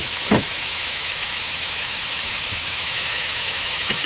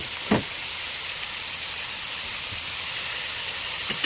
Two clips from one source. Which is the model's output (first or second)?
first